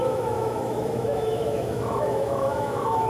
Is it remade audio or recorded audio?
remade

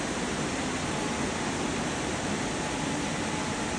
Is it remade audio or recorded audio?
recorded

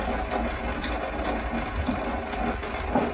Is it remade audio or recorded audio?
recorded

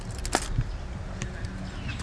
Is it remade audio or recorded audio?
recorded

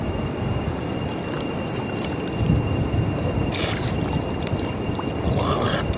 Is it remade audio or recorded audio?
remade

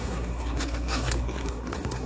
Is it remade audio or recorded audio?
remade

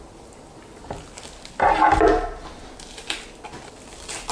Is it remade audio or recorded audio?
recorded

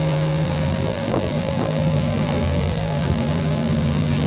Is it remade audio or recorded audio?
remade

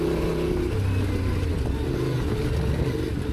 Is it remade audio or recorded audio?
recorded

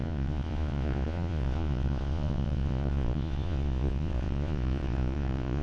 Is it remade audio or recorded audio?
remade